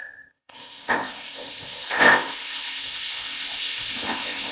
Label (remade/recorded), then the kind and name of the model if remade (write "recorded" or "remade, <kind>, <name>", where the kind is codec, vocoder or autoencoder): remade, codec, ZipCodec